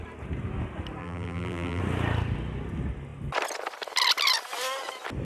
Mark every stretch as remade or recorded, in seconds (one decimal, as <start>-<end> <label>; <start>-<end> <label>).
0.0-1.0 recorded; 1.0-1.8 remade; 1.8-5.2 recorded